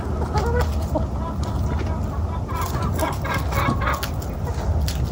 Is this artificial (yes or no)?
no